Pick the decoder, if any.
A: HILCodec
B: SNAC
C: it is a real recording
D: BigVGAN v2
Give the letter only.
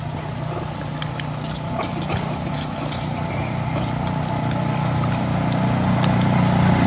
D